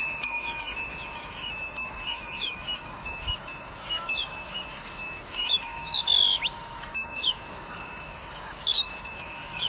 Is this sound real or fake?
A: fake